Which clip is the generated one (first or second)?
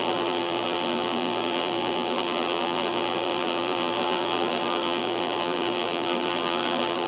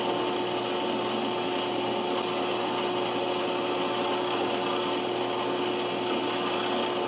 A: first